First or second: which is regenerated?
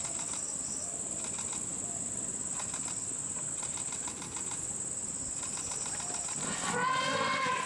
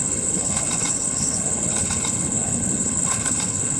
second